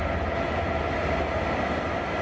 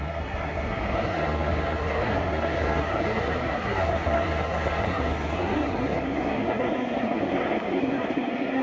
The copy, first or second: second